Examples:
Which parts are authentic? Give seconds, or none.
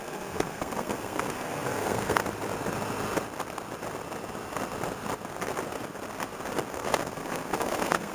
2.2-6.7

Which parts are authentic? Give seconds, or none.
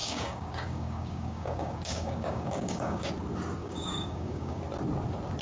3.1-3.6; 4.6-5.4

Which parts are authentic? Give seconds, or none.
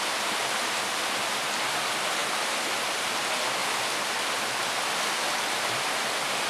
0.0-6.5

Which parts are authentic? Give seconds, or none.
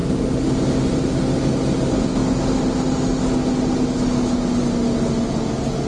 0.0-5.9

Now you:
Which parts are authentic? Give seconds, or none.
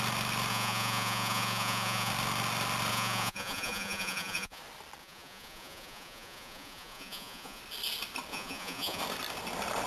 0.0-0.5; 2.1-2.9; 4.6-5.0; 7.6-8.3; 9.0-9.9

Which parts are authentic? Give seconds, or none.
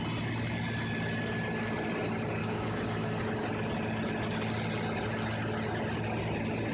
0.0-2.4; 3.2-6.7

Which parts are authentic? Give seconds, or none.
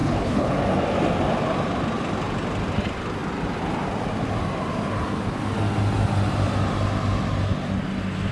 0.5-8.3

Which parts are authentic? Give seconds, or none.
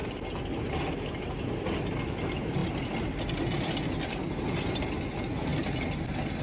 0.0-6.4